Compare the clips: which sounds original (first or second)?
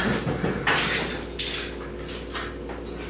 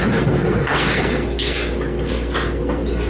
first